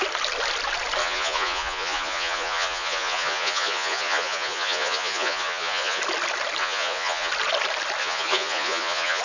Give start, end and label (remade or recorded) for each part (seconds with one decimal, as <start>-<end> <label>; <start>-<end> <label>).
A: 0.0-1.0 recorded; 1.0-6.0 remade; 6.0-6.6 recorded; 6.6-7.3 remade; 7.3-8.0 recorded; 8.0-9.2 remade